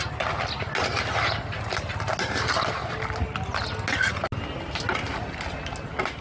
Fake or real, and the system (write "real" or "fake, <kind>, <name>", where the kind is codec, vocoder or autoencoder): real